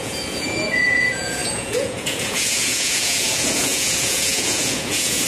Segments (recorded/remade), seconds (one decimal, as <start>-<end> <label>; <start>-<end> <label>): 0.0-5.3 remade